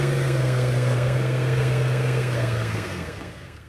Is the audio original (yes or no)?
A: no